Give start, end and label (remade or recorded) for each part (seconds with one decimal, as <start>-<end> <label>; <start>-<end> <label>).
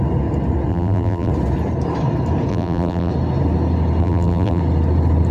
0.0-0.7 recorded; 0.7-1.3 remade; 1.3-2.5 recorded; 2.5-3.1 remade; 3.1-4.0 recorded; 4.0-4.6 remade; 4.6-5.3 recorded